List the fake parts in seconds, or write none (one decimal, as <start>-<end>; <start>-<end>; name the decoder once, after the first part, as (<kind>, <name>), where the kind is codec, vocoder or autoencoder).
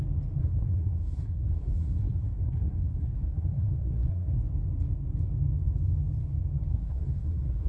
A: 0.4-4.4 (codec, SNAC); 6.7-7.7